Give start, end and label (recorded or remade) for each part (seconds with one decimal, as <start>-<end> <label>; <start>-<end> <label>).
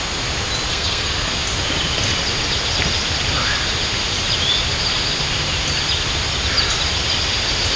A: 0.0-0.7 recorded; 0.7-1.3 remade; 1.3-7.8 recorded